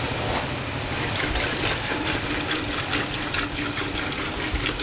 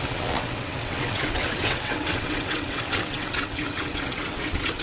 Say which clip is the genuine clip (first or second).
first